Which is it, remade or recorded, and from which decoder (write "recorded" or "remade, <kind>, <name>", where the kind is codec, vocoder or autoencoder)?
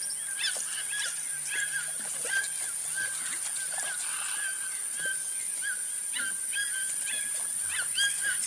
recorded